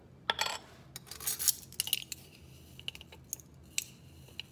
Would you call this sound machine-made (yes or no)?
no